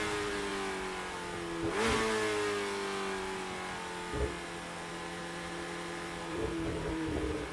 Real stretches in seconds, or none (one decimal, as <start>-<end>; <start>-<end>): 0.5-4.9